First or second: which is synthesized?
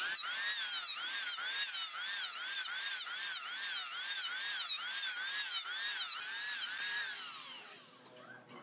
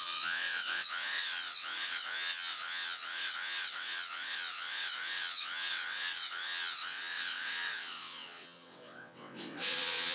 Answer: second